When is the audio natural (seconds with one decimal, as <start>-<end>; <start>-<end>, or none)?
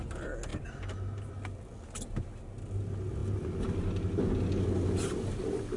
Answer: 0.0-5.8